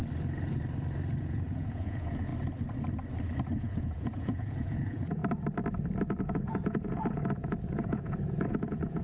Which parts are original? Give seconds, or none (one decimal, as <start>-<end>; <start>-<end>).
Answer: 0.0-1.2; 2.3-3.6; 5.2-6.2